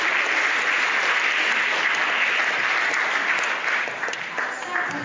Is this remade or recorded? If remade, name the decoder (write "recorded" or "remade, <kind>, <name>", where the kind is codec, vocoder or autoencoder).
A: recorded